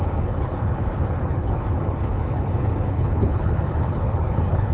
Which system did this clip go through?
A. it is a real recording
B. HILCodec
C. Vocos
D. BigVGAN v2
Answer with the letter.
B